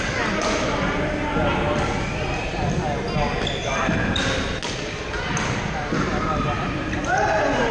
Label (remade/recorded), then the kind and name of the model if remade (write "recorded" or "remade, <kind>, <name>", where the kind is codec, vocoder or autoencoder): recorded